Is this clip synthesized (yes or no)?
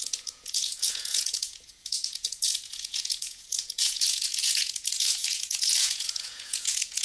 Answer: yes